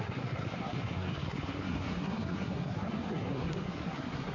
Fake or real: fake